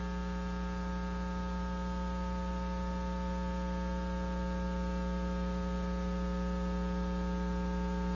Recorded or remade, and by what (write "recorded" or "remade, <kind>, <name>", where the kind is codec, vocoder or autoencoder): recorded